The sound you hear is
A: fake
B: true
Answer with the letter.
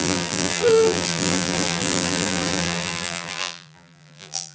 A